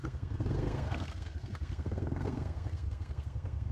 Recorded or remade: remade